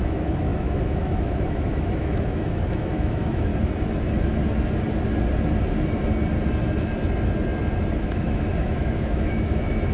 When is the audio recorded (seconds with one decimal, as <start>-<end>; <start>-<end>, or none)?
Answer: 3.5-8.0